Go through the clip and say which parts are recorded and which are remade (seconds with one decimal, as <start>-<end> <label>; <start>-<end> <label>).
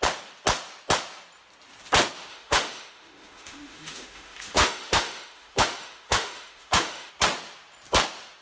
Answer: 0.0-2.3 recorded; 2.3-7.1 remade; 7.1-8.4 recorded